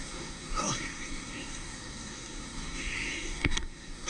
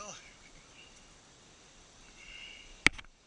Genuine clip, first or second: second